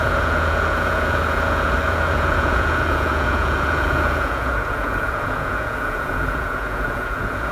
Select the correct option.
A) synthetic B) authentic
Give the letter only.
A